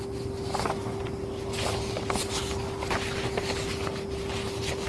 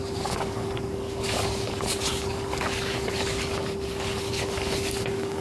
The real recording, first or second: first